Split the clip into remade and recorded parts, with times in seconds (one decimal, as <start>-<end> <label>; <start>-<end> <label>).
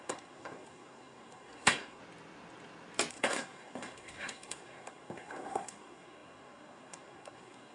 0.0-2.0 remade; 2.0-3.1 recorded; 3.1-7.7 remade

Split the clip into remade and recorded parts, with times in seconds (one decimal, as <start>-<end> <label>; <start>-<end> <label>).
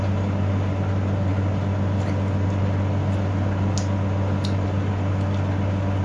0.0-6.0 recorded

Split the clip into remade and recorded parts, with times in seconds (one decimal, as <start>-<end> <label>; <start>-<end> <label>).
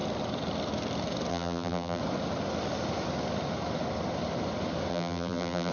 0.0-1.3 recorded; 1.3-2.0 remade; 2.0-4.9 recorded; 4.9-5.7 remade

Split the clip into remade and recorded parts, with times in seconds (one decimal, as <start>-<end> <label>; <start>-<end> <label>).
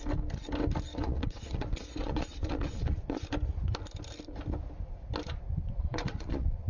0.0-0.9 recorded; 0.9-3.2 remade; 3.2-5.6 recorded; 5.6-6.7 remade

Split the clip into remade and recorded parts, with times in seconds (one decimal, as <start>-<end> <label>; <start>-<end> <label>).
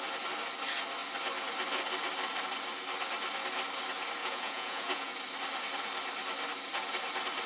0.0-4.2 recorded; 4.2-5.1 remade; 5.1-7.5 recorded